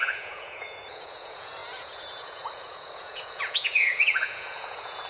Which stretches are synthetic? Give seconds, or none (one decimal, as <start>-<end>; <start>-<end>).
0.0-5.1